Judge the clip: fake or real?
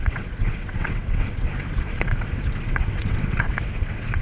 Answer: fake